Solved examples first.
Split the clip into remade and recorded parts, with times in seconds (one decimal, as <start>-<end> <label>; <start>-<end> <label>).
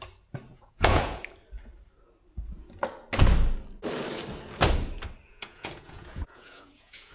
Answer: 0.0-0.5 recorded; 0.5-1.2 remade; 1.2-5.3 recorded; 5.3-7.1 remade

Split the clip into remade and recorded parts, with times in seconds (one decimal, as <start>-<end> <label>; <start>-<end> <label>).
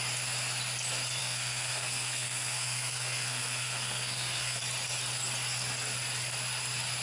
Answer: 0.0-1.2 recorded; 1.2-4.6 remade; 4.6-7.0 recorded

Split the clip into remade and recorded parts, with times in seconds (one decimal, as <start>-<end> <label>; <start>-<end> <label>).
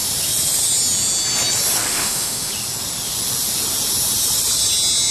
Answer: 0.0-1.9 recorded; 1.9-2.5 remade; 2.5-5.1 recorded